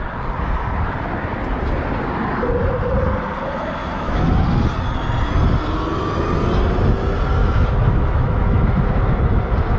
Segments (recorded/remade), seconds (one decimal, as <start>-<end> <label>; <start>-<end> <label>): 0.0-3.8 recorded; 3.8-4.4 remade; 4.4-7.4 recorded; 7.4-9.0 remade; 9.0-9.8 recorded